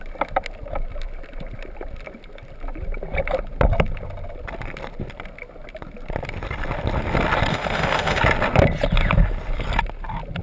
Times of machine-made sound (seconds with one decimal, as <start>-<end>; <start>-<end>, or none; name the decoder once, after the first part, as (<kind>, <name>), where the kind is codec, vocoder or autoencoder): 7.5-8.2 (autoencoder, DAC-VAE)